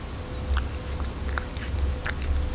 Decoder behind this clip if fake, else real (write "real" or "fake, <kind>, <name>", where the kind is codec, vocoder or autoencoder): real